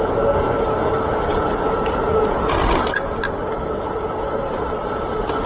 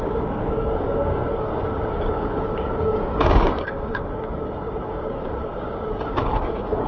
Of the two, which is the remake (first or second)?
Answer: second